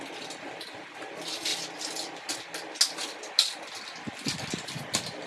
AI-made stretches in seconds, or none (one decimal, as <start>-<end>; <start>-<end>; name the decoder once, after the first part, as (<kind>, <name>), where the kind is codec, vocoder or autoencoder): none